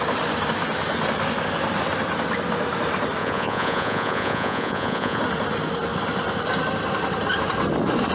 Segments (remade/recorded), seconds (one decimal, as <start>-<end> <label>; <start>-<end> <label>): 0.0-3.2 recorded; 3.2-5.2 remade; 5.2-8.1 recorded